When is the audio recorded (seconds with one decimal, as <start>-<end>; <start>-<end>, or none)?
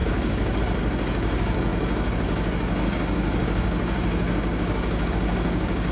none